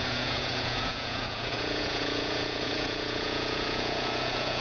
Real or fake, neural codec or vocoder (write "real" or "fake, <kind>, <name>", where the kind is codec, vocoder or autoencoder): fake, vocoder, Vocos